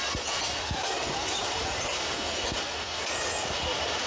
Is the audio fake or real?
real